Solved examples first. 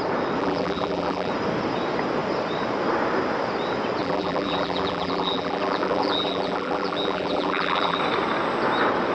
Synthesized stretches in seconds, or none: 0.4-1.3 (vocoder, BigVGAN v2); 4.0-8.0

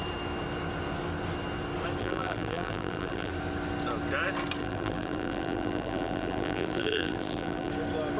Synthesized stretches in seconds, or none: 2.0-3.3 (vocoder, BigVGAN v2); 4.6-7.7